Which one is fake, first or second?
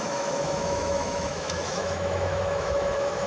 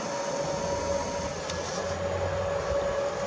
first